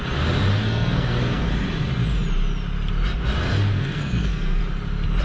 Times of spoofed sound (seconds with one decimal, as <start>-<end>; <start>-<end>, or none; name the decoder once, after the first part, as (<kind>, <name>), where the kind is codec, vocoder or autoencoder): 0.6-1.5 (codec, SNAC); 3.7-4.6